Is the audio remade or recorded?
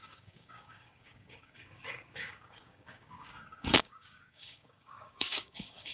remade